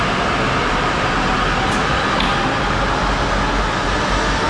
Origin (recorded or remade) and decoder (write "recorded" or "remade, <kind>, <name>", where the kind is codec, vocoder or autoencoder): recorded